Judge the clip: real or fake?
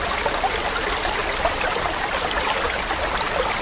real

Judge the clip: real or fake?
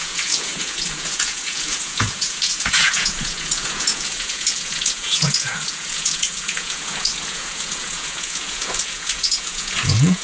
fake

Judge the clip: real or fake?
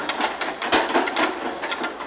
real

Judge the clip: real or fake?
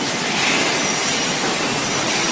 real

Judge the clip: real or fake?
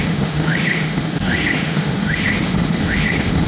fake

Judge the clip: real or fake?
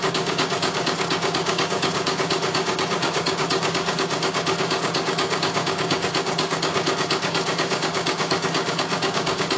fake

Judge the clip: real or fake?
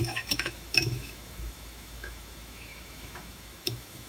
fake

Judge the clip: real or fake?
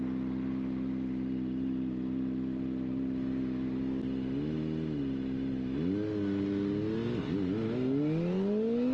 real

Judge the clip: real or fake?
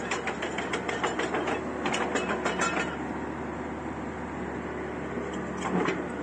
real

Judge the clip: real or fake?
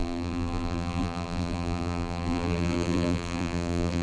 fake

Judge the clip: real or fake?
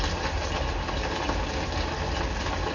real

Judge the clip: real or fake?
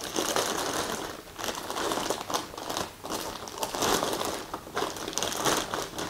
real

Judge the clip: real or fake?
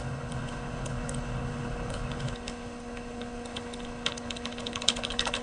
fake